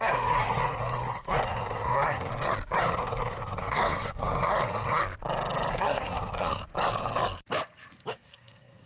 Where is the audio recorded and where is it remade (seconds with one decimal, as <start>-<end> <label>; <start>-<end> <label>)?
0.0-2.3 remade; 2.3-2.8 recorded; 2.8-5.0 remade; 5.0-5.7 recorded; 5.7-6.6 remade; 6.6-8.1 recorded; 8.1-8.9 remade